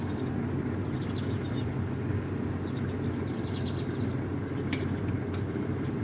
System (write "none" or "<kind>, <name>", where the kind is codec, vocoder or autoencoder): none